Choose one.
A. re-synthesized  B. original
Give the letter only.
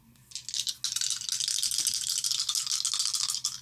B